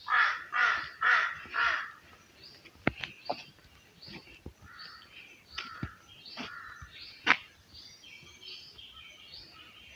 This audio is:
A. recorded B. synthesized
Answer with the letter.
A